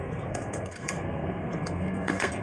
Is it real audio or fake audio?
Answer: fake